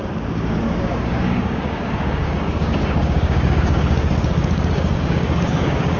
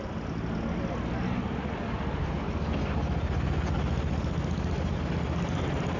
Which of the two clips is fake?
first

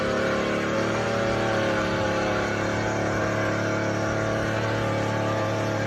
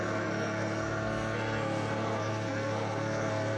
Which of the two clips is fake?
second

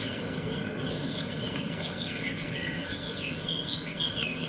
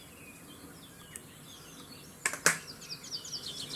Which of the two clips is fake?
first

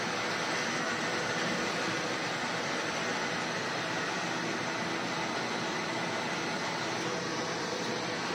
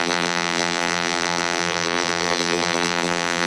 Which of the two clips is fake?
second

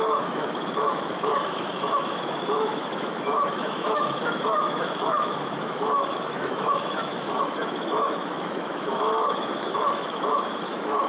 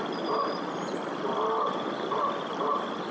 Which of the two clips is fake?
first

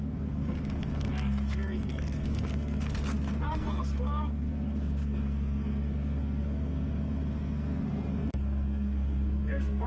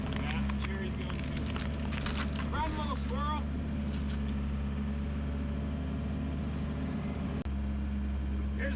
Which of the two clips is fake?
first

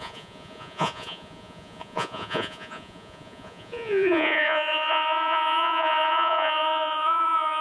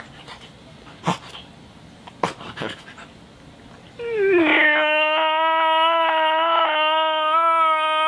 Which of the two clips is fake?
first